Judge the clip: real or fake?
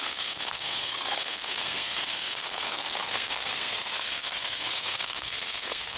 fake